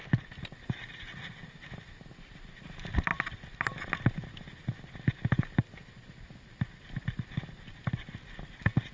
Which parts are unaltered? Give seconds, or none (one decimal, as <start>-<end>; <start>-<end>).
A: 0.0-2.2; 3.1-4.1